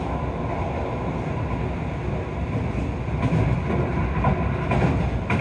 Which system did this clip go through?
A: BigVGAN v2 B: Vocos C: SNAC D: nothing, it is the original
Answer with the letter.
D